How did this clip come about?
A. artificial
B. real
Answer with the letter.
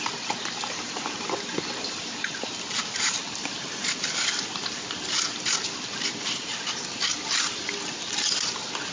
B